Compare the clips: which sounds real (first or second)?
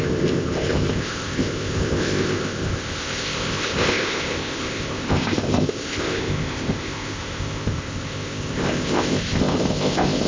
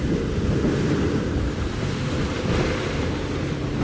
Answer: second